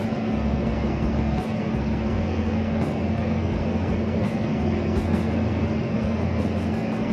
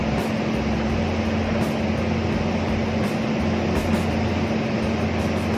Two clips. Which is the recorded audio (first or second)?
second